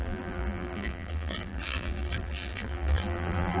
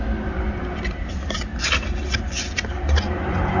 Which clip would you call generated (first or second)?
first